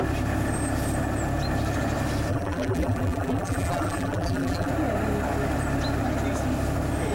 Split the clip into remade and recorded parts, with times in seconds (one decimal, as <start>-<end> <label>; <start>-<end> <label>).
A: 0.0-2.3 recorded; 2.3-4.7 remade; 4.7-7.1 recorded